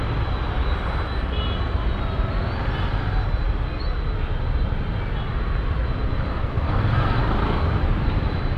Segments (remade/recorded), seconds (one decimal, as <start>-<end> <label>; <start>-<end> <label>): 0.0-6.3 recorded; 6.3-7.2 remade; 7.2-8.6 recorded